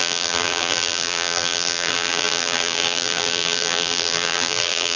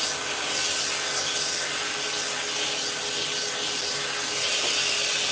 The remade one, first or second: first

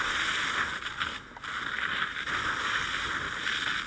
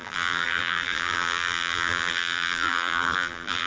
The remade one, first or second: second